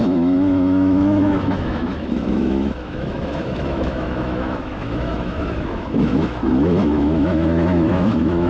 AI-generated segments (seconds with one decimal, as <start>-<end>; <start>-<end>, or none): 0.0-8.5